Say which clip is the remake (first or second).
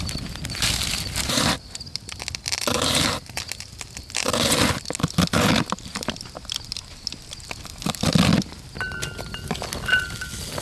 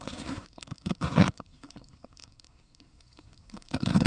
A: second